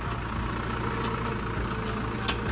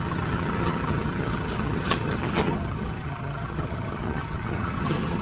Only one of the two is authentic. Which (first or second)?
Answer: first